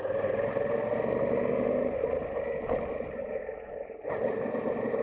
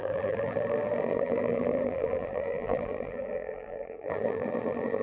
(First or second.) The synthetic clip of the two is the second